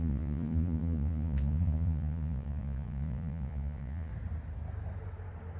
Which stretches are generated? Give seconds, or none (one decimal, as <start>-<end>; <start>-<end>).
0.0-4.1